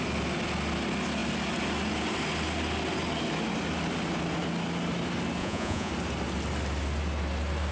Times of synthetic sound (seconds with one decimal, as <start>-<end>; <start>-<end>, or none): 5.4-5.9